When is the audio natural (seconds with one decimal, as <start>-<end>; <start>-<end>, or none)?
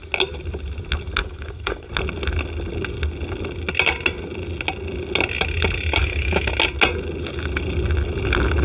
0.0-1.2; 1.9-6.0; 6.5-8.6